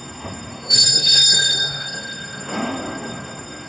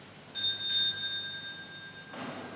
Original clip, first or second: second